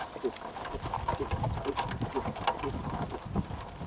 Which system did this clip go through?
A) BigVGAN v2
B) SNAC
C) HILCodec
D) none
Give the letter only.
D